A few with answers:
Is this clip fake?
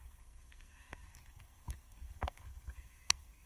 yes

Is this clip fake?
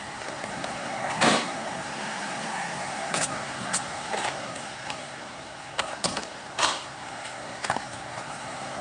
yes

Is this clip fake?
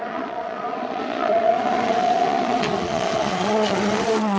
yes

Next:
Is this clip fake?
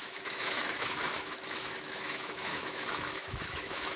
yes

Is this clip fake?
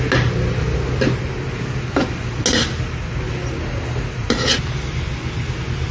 no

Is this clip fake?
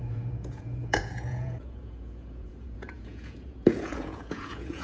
yes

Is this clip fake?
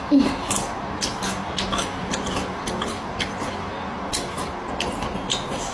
no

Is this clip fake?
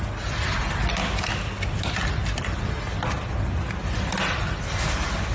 no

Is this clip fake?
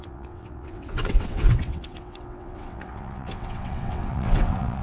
yes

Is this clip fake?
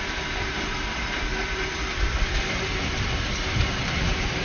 no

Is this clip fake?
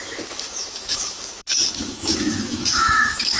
yes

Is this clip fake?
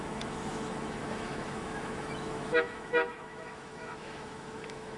yes